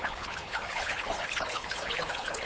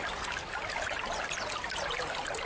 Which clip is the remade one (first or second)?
first